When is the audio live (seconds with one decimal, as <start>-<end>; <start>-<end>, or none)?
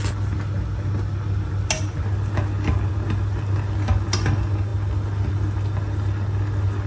0.0-6.9